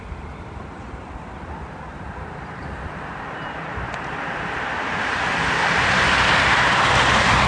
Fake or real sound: fake